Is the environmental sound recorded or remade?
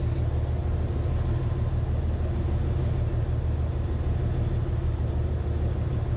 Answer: recorded